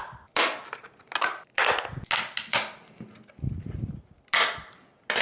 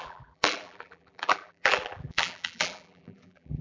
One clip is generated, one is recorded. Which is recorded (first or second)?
first